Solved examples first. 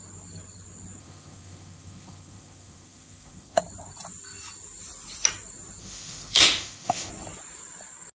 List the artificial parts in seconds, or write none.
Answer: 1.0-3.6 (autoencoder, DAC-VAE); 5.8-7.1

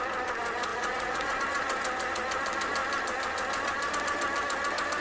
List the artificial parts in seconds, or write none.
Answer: 0.7-1.4 (vocoder, Vocos)

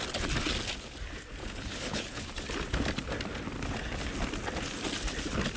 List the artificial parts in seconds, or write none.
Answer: 1.4-2.3 (codec, HILCodec)